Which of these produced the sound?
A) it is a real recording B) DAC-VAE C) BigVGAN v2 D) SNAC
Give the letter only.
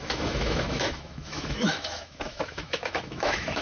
B